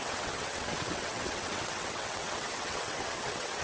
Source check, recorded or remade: remade